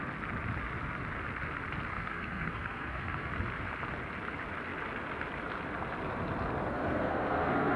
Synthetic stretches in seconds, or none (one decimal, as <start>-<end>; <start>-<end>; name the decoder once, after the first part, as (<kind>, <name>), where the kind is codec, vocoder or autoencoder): 1.9-3.3 (codec, SNAC); 6.6-7.8